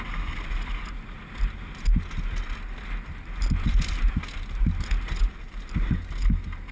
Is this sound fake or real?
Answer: real